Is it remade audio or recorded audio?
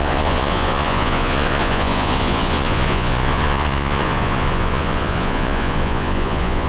remade